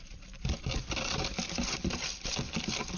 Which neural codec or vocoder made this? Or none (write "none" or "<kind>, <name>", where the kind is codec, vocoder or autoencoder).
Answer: none